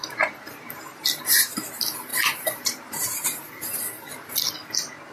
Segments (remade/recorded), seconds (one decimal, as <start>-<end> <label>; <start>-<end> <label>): 0.0-1.2 remade; 1.2-2.1 recorded; 2.1-3.9 remade; 3.9-5.1 recorded